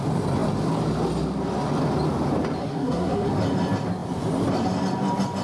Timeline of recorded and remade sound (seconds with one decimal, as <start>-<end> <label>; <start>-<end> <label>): 0.0-2.6 recorded; 2.6-3.3 remade; 3.3-5.4 recorded